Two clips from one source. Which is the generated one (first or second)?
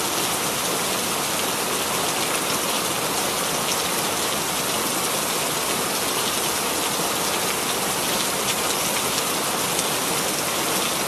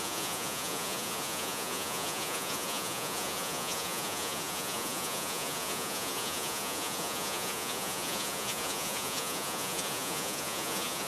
second